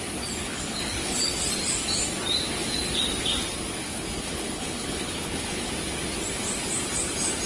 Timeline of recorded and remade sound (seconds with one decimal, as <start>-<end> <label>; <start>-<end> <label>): 0.0-0.4 recorded; 0.4-1.3 remade; 1.3-3.8 recorded; 3.8-5.7 remade; 5.7-7.5 recorded